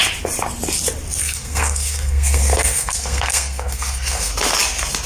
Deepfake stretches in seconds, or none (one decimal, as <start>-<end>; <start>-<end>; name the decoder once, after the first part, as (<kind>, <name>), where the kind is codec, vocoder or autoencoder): 1.2-4.3 (codec, SNAC)

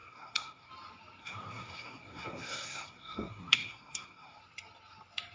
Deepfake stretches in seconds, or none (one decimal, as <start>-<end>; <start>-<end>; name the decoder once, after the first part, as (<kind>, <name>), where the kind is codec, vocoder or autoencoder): 0.0-0.7 (codec, SNAC); 1.2-4.4